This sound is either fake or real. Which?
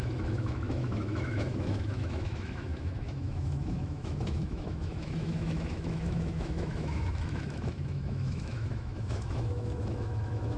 fake